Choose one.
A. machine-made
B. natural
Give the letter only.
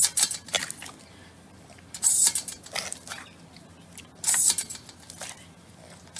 B